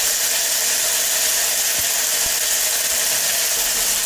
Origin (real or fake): real